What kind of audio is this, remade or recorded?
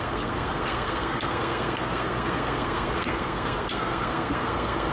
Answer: remade